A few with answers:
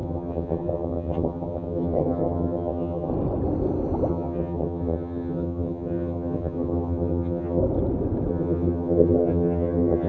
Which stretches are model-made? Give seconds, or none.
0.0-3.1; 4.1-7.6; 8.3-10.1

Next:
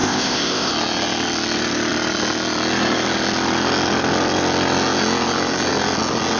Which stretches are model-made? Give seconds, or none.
0.0-0.7

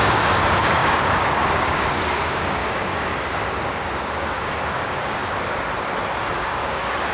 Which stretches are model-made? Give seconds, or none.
0.0-5.2; 6.3-7.1